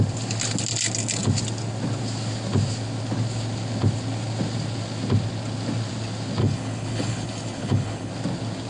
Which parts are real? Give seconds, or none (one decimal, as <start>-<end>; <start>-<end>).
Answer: 0.0-6.4; 8.1-8.7